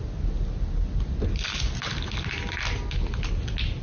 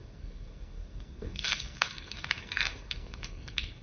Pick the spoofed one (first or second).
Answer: second